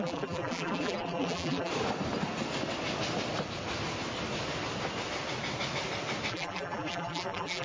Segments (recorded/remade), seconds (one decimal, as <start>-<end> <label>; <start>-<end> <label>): 0.0-1.7 remade; 1.7-6.3 recorded; 6.3-7.6 remade